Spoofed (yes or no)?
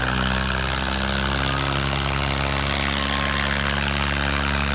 no